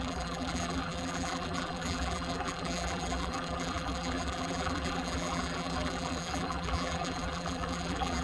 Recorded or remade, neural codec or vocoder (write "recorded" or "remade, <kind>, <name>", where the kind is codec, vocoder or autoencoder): remade, vocoder, BigVGAN v2